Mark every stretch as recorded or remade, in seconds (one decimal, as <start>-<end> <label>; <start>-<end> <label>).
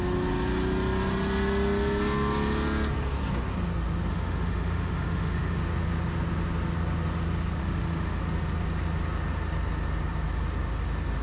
0.0-4.1 recorded; 4.1-5.6 remade; 5.6-7.6 recorded; 7.6-8.2 remade; 8.2-11.2 recorded